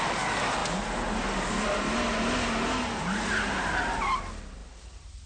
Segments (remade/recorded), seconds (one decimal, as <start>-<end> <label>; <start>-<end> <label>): 0.0-5.3 recorded

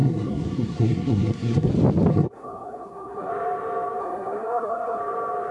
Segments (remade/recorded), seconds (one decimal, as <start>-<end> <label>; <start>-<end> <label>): 0.0-1.7 remade; 1.7-2.1 recorded; 2.1-3.3 remade; 3.3-4.0 recorded; 4.0-5.0 remade; 5.0-5.5 recorded

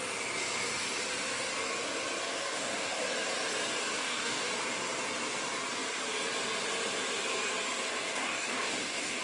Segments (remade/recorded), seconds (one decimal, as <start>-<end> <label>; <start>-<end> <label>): 0.0-2.2 recorded; 2.2-3.0 remade; 3.0-4.0 recorded; 4.0-4.5 remade; 4.5-7.9 recorded; 7.9-9.2 remade

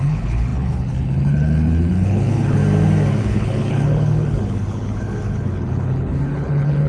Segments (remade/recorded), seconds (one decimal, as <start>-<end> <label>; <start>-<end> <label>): 0.0-2.6 remade; 2.6-3.2 recorded; 3.2-6.9 remade

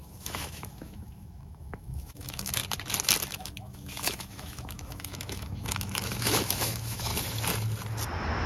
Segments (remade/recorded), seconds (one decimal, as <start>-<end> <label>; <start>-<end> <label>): 0.0-2.6 remade; 2.6-3.3 recorded; 3.3-7.1 remade; 7.1-8.5 recorded

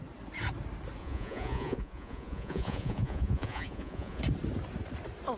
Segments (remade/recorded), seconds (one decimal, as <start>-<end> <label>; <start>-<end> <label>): 0.0-1.0 recorded; 1.0-4.2 remade; 4.2-5.4 recorded